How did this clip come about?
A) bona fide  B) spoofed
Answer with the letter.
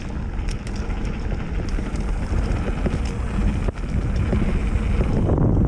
A